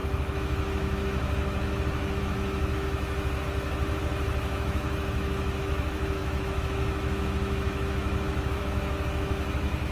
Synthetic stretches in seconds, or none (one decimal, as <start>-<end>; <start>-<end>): 0.0-9.9